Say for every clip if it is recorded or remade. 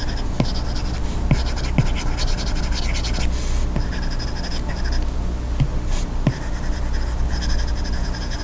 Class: recorded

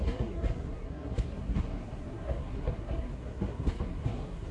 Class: remade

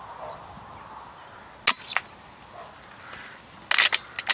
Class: recorded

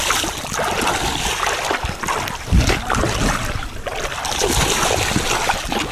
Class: recorded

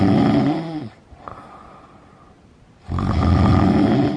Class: recorded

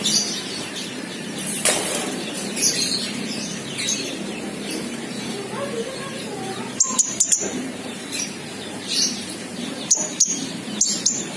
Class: remade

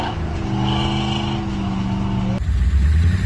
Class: recorded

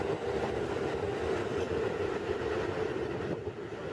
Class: recorded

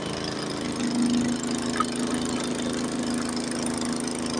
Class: recorded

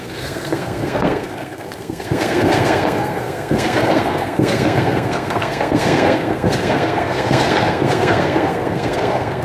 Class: remade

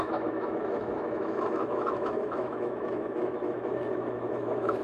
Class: remade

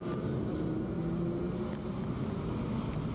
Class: recorded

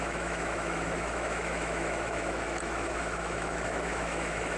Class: remade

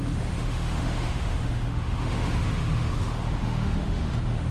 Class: remade